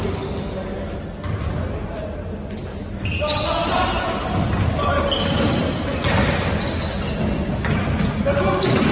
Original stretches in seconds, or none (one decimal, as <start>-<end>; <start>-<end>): 0.0-8.9